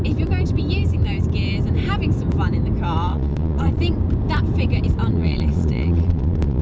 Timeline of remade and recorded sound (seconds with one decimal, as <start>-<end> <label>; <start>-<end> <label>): 0.0-3.1 recorded; 3.1-3.8 remade; 3.8-5.1 recorded; 5.1-6.6 remade